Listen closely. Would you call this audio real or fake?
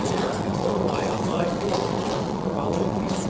fake